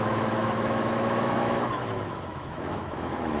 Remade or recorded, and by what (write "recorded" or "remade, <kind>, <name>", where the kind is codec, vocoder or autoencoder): remade, autoencoder, DAC-VAE